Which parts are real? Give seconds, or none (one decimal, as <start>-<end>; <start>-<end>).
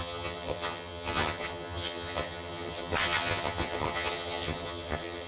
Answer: none